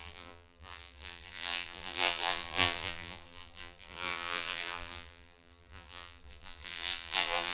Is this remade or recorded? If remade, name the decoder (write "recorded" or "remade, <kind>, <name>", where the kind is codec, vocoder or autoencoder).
remade, vocoder, BigVGAN v2